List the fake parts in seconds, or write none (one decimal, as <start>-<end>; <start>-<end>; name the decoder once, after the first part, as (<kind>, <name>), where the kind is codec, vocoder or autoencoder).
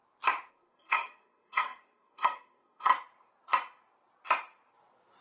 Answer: 0.5-2.9 (codec, SNAC)